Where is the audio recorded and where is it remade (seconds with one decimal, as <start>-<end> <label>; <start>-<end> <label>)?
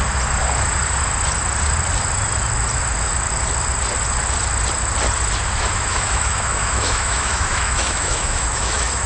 0.0-5.9 recorded; 5.9-9.1 remade